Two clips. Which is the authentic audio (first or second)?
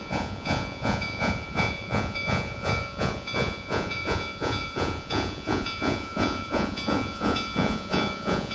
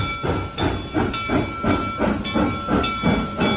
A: second